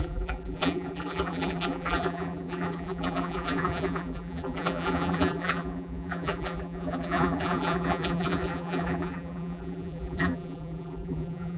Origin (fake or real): fake